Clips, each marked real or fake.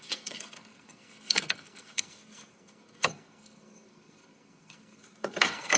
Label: fake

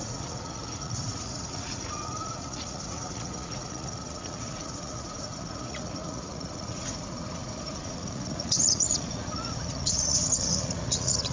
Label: fake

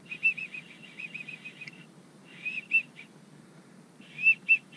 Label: real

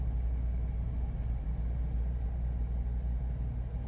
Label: real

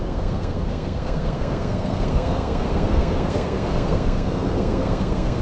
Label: fake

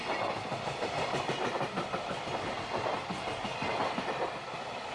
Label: real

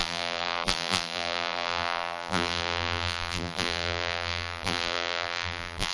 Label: fake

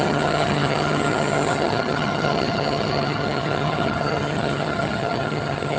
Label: fake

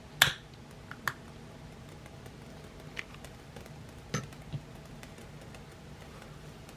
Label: real